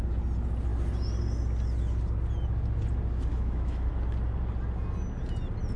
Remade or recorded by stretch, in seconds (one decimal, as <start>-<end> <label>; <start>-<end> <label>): 0.0-3.3 recorded; 3.3-3.9 remade; 3.9-5.8 recorded